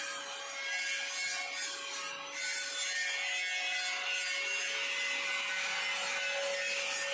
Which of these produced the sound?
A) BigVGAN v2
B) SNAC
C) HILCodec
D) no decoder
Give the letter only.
D